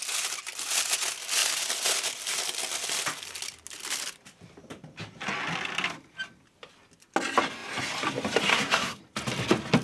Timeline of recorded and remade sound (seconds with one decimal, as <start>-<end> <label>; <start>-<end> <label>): 0.0-8.5 recorded; 8.5-9.0 remade; 9.0-9.8 recorded